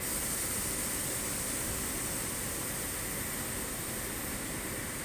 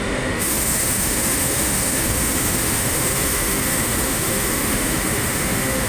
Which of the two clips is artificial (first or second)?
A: second